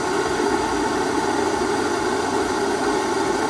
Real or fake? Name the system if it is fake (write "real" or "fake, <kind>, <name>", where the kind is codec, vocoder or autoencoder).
real